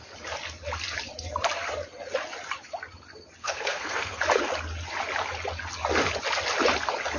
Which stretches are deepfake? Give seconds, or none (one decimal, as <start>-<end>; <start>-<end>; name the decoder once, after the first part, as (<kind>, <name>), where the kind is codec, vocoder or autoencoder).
3.4-4.2 (codec, SNAC)